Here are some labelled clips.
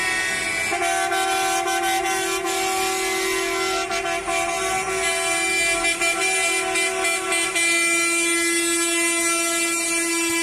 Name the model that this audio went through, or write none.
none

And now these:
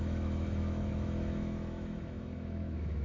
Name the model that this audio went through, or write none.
autoencoder, DAC-VAE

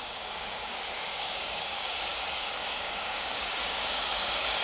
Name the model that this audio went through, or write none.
codec, DAC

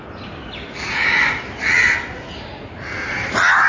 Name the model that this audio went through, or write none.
none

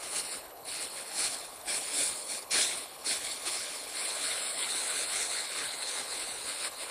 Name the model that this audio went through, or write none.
codec, HILCodec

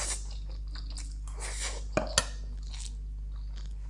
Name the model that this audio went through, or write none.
none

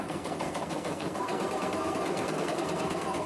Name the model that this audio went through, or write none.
codec, SNAC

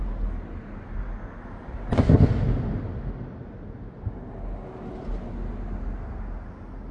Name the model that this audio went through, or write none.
none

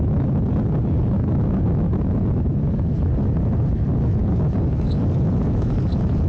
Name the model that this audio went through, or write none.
autoencoder, DAC-VAE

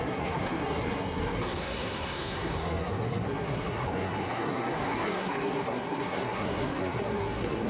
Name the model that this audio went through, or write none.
codec, SNAC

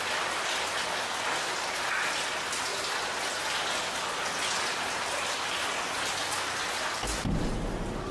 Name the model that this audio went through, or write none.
none